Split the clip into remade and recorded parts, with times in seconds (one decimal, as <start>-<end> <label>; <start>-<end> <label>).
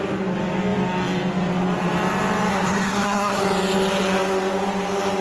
0.0-2.5 recorded; 2.5-3.4 remade; 3.4-5.2 recorded